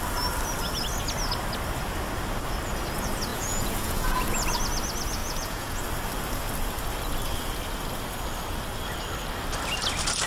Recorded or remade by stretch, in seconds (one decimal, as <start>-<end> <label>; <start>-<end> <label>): 0.0-3.3 recorded; 3.3-4.2 remade; 4.2-5.2 recorded; 5.2-5.8 remade; 5.8-10.3 recorded